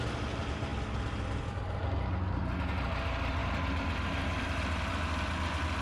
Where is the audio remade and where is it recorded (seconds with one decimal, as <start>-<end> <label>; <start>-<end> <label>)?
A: 0.0-5.8 recorded